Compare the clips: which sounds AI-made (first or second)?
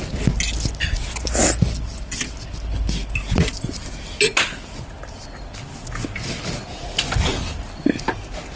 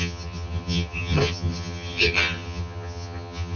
second